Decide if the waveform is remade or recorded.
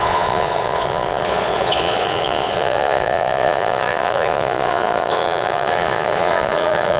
remade